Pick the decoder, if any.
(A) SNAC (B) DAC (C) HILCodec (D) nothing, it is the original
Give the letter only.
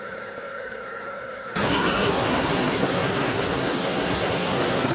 A